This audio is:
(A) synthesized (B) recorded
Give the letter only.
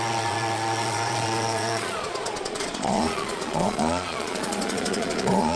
A